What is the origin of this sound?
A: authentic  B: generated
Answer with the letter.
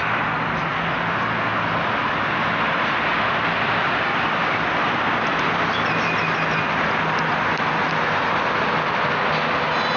A